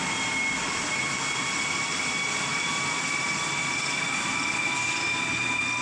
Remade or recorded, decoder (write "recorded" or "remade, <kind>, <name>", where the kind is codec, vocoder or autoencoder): recorded